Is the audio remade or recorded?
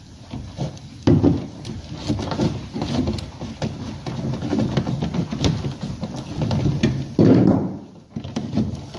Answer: recorded